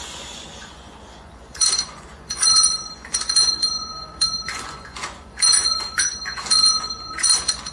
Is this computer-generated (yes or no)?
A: yes